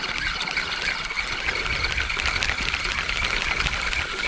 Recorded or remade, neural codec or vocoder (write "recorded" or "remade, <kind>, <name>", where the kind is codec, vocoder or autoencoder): recorded